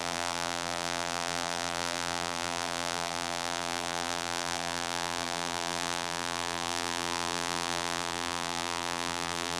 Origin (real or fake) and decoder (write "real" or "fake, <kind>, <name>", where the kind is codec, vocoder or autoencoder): fake, vocoder, BigVGAN v2